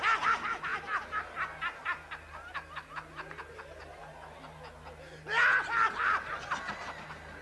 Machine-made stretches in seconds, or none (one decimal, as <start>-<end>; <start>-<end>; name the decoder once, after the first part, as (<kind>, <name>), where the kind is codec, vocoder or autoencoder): 0.0-7.4 (vocoder, BigVGAN v2)